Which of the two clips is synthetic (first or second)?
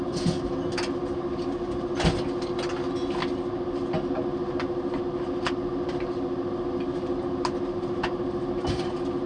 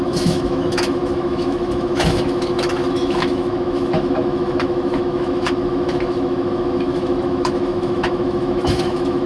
second